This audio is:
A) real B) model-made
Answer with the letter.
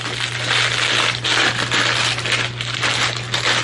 A